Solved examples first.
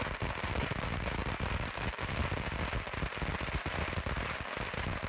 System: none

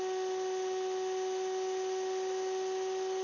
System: none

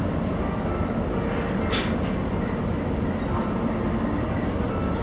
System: none